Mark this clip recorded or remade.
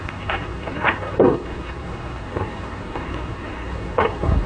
remade